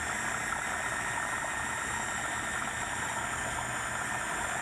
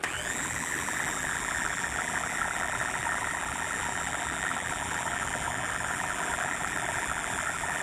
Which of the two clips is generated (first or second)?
second